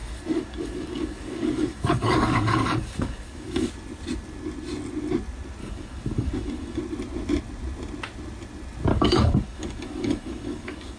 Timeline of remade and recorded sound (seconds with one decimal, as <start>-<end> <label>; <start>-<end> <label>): 0.0-3.7 remade; 3.7-5.6 recorded; 5.6-6.8 remade; 6.8-8.9 recorded; 8.9-11.0 remade